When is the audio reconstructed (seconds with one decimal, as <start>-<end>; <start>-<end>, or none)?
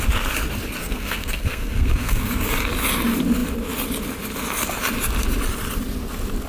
0.8-2.3